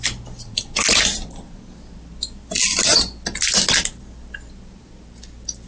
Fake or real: real